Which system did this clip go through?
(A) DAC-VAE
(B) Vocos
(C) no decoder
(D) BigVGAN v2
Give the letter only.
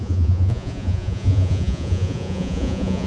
B